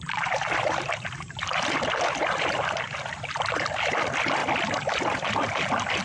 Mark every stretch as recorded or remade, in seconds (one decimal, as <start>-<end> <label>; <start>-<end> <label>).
0.0-6.0 recorded

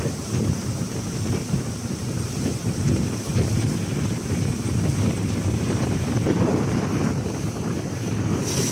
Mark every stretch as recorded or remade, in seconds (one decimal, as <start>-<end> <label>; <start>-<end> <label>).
0.0-3.3 remade; 3.3-4.3 recorded; 4.3-8.7 remade

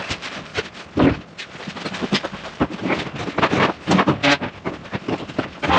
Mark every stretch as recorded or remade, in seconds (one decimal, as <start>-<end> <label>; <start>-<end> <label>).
0.0-0.5 remade; 0.5-1.9 recorded; 1.9-2.8 remade; 2.8-5.8 recorded